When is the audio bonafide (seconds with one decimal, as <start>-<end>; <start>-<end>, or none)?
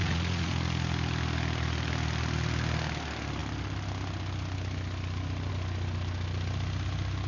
0.5-7.3